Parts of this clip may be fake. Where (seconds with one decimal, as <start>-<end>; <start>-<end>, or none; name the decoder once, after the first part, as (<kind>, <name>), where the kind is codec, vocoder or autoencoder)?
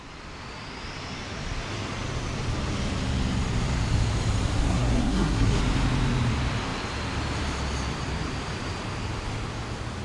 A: 4.7-5.6 (codec, SNAC)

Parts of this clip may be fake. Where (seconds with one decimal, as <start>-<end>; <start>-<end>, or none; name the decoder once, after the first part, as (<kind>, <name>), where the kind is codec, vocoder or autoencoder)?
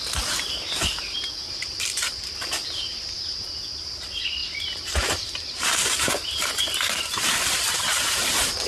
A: 0.0-8.7 (vocoder, BigVGAN v2)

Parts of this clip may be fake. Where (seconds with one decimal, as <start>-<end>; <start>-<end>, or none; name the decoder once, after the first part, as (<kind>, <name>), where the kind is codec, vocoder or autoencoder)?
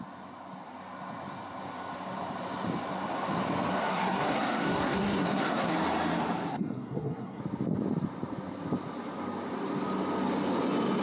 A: 3.8-5.7 (codec, SNAC); 6.5-7.4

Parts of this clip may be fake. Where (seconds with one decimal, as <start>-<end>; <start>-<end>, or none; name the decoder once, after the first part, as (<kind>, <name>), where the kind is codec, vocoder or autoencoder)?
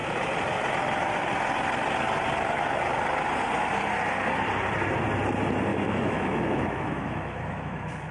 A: 5.7-8.1 (autoencoder, DAC-VAE)